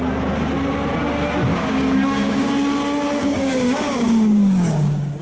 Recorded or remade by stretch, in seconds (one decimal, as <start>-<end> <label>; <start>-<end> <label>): 0.0-1.5 recorded; 1.5-2.5 remade; 2.5-3.2 recorded; 3.2-5.2 remade

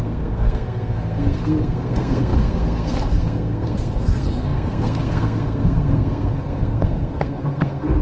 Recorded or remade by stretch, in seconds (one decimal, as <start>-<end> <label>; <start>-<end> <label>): 0.0-8.0 remade

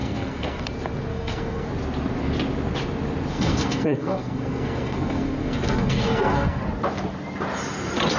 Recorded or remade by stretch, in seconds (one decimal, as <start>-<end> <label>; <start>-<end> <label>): 0.0-0.7 remade; 0.7-1.1 recorded; 1.1-1.7 remade; 1.7-3.3 recorded; 3.3-6.6 remade; 6.6-8.2 recorded